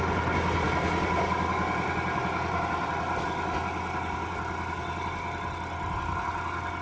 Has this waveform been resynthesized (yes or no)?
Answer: no